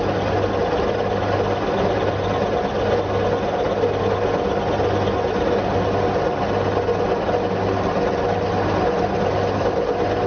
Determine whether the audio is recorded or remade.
recorded